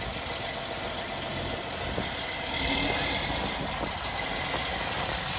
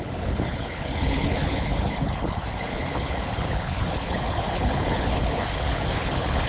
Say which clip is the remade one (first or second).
second